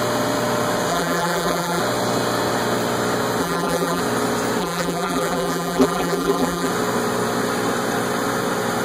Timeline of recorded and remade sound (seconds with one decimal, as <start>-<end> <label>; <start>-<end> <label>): 0.0-0.9 recorded; 0.9-1.8 remade; 1.8-3.4 recorded; 3.4-4.0 remade; 4.0-4.6 recorded; 4.6-6.7 remade; 6.7-8.8 recorded